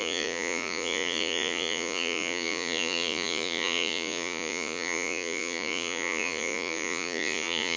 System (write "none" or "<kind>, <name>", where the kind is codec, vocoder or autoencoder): vocoder, Vocos